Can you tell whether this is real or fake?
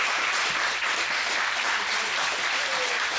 real